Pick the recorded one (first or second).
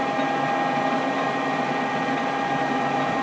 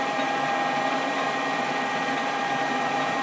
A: first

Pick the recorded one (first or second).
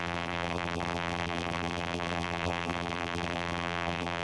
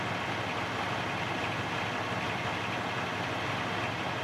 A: second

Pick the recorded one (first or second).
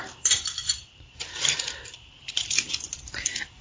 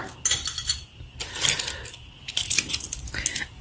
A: second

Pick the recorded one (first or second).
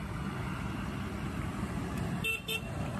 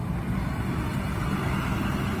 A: second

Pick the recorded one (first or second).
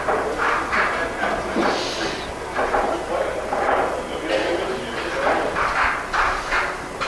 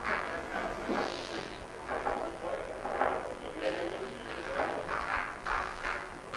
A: first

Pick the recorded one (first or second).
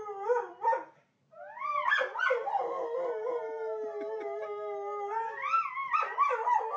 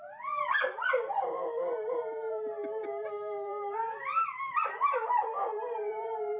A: first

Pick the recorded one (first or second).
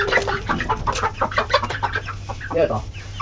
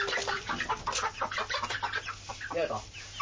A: second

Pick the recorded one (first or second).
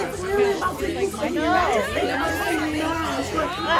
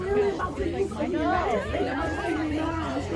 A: first